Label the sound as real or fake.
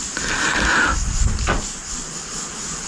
real